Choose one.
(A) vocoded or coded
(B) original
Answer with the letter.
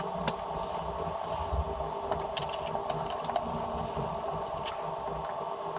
B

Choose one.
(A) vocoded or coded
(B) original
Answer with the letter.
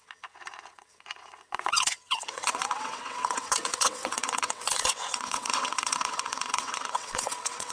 A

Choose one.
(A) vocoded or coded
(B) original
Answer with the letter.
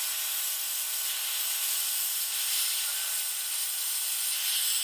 B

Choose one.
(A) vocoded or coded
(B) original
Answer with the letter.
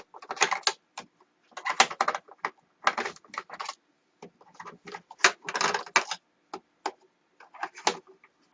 B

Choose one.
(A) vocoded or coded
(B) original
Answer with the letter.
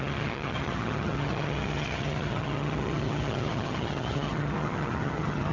A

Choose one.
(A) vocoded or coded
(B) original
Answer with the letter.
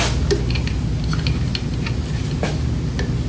B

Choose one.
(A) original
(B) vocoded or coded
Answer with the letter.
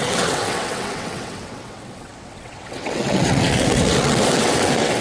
B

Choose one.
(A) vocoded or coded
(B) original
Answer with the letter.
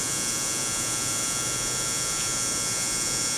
A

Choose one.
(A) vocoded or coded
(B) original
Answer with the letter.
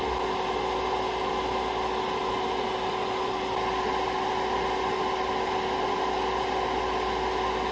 B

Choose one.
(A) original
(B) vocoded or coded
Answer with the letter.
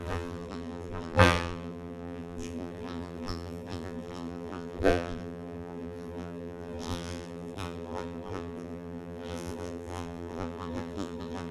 B